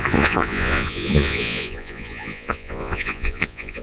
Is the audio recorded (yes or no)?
no